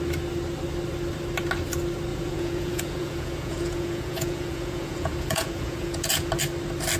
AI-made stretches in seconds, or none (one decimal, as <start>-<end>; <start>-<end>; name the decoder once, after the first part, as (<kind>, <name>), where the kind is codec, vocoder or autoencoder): 2.1-6.3 (vocoder, Vocos)